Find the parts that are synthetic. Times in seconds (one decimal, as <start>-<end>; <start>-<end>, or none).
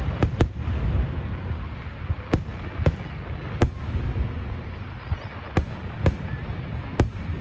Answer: none